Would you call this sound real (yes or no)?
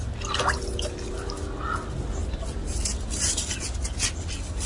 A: yes